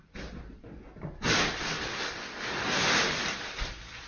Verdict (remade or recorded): recorded